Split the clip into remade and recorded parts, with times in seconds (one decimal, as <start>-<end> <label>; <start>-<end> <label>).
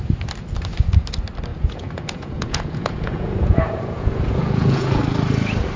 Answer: 0.0-1.5 recorded; 1.5-5.0 remade; 5.0-5.8 recorded